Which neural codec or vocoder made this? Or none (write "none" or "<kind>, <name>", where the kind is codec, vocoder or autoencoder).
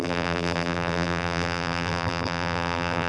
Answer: vocoder, BigVGAN v2